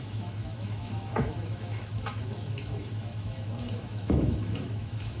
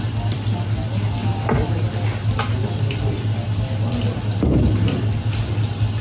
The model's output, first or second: first